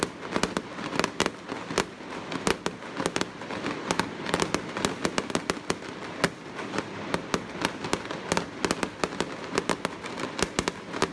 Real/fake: real